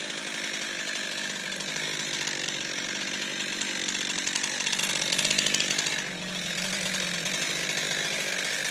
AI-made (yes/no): no